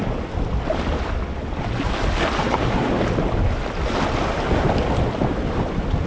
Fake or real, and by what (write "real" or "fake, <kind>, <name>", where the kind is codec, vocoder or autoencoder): real